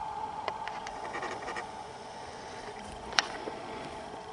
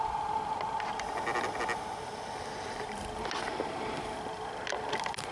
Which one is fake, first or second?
first